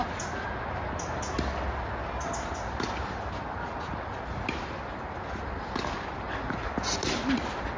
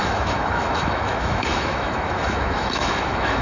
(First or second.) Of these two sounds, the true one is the first